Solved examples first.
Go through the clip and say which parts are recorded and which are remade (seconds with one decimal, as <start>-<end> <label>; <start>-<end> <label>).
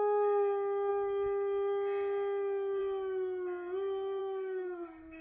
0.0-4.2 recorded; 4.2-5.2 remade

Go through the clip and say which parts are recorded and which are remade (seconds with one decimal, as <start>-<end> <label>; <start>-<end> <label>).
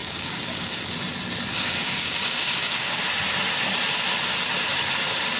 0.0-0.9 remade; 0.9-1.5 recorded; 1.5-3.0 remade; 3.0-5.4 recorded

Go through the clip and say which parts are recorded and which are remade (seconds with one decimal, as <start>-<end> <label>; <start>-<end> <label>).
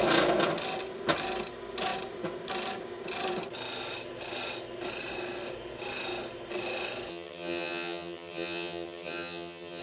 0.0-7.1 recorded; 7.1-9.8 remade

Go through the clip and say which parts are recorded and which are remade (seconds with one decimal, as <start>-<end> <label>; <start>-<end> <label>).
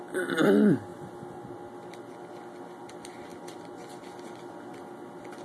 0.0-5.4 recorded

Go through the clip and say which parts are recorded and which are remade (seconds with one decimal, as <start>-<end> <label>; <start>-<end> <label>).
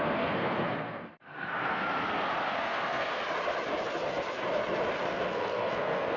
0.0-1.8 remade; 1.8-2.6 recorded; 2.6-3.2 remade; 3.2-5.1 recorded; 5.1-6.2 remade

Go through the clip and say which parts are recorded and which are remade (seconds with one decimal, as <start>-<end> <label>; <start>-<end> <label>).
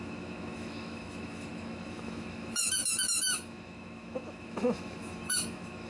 0.0-5.9 remade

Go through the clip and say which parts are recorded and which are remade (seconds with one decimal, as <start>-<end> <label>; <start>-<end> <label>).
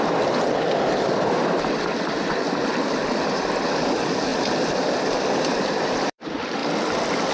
0.0-6.6 remade; 6.6-7.3 recorded